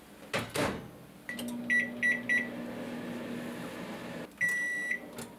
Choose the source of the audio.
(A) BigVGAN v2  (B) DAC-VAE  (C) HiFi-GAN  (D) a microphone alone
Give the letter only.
D